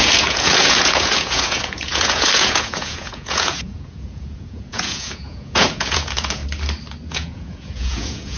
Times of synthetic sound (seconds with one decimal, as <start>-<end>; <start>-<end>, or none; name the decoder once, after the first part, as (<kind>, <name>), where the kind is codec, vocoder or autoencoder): 0.0-6.4 (vocoder, Vocos); 7.1-8.4